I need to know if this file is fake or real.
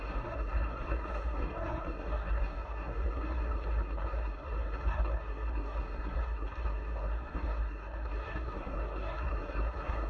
fake